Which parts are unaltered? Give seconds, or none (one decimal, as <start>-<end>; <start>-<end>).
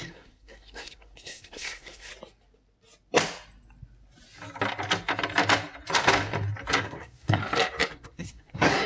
2.1-6.7; 7.4-7.9